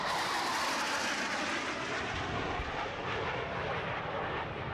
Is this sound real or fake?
real